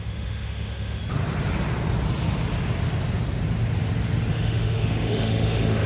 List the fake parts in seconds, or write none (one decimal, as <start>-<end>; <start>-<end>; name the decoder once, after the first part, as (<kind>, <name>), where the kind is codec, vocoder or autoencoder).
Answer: 0.0-1.0 (autoencoder, DAC-VAE); 4.3-5.9